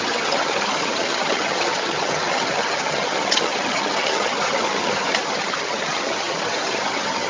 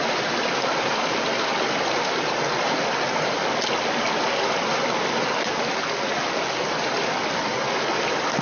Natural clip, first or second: second